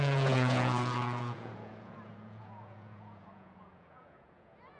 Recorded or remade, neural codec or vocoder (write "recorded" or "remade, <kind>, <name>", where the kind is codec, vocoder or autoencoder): remade, vocoder, Vocos